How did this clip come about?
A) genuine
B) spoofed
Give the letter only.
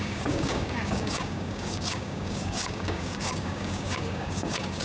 B